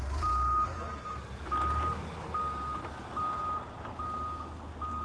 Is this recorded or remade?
recorded